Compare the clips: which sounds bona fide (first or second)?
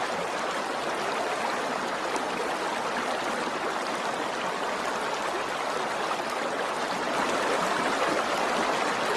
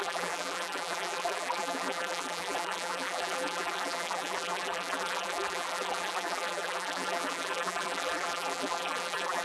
first